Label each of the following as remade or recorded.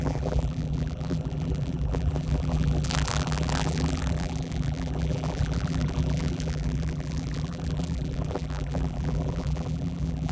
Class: remade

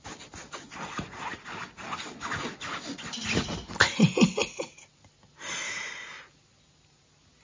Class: recorded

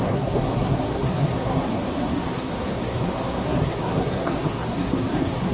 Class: remade